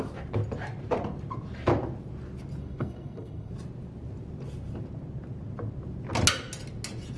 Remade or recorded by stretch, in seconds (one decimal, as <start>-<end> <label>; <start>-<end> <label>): 0.0-2.6 recorded; 2.6-3.5 remade; 3.5-7.2 recorded